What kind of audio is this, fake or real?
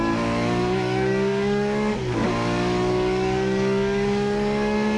fake